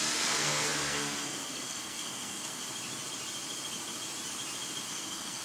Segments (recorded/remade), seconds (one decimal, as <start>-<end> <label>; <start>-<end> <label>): 0.0-2.6 remade; 2.6-4.9 recorded; 4.9-5.4 remade